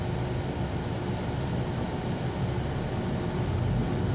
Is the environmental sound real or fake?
real